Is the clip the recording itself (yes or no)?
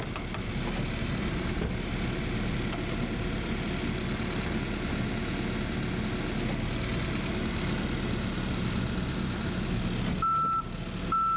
yes